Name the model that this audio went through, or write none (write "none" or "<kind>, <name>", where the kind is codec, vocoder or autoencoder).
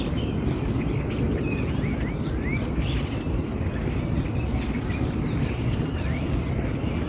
none